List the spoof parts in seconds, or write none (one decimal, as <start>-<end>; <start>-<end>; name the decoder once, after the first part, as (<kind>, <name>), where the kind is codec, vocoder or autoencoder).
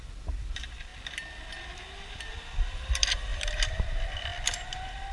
0.0-0.9 (vocoder, BigVGAN v2); 2.3-3.3; 3.8-5.1